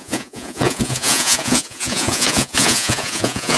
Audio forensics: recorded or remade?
remade